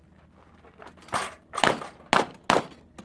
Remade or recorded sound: recorded